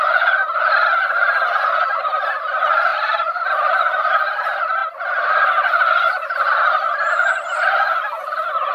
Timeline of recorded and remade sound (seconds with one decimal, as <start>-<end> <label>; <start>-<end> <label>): 0.0-2.9 recorded; 2.9-3.5 remade; 3.5-8.7 recorded